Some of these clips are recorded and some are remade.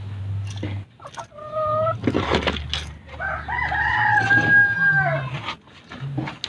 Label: recorded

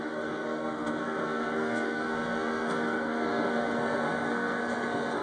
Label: remade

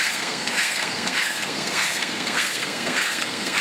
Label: remade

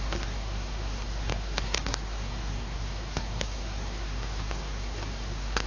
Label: remade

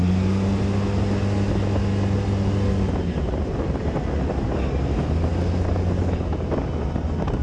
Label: recorded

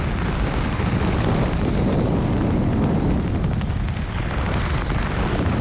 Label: recorded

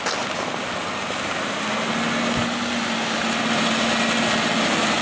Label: recorded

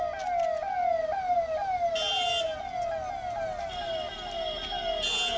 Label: recorded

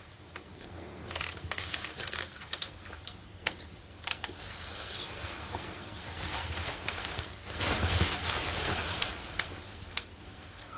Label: remade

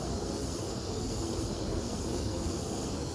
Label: remade